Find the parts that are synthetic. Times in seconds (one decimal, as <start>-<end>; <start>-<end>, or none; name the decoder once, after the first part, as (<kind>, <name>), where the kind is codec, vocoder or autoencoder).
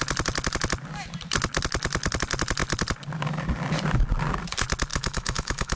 4.9-5.8 (autoencoder, DAC-VAE)